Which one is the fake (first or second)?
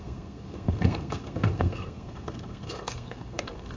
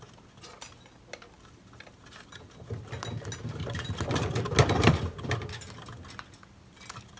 first